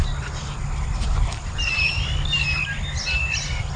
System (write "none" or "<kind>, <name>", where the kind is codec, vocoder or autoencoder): none